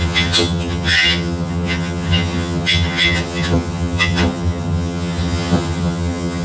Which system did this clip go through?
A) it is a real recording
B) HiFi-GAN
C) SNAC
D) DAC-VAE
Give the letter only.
B